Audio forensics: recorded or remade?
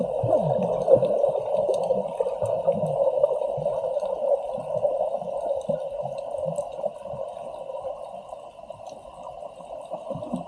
recorded